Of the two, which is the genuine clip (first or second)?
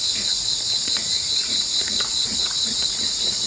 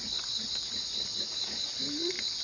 second